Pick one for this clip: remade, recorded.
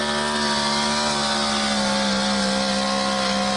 recorded